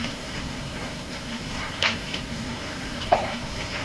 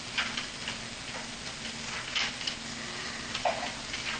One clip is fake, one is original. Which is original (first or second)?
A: second